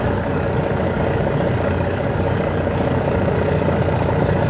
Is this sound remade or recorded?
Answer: remade